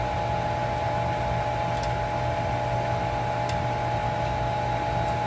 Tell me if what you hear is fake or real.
real